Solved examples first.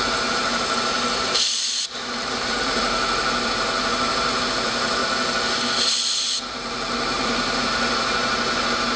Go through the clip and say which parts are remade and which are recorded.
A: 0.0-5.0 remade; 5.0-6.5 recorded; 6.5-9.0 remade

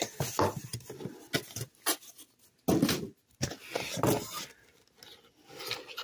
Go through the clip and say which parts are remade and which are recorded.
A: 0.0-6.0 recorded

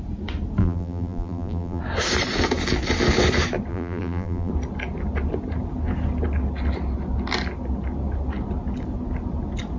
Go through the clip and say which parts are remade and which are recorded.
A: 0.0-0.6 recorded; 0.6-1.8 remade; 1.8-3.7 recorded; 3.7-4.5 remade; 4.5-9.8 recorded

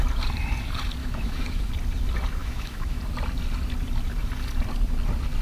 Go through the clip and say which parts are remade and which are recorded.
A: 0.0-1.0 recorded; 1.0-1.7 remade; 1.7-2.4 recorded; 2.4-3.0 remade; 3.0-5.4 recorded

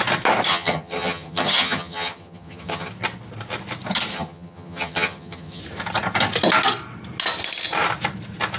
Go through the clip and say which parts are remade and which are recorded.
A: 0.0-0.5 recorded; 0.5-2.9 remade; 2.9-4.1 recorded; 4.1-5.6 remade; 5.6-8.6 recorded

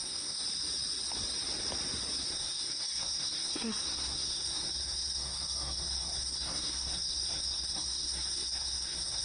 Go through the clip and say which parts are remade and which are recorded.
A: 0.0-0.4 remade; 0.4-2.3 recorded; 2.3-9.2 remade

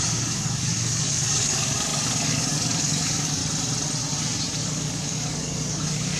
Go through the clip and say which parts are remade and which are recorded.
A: 0.0-3.4 remade; 3.4-4.6 recorded; 4.6-6.2 remade